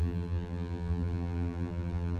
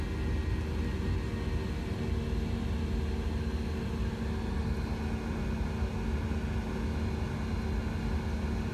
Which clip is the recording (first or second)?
second